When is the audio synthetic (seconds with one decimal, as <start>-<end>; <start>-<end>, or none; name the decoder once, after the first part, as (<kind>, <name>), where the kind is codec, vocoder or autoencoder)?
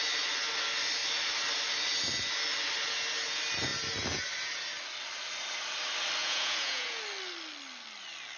6.2-7.0 (vocoder, Vocos)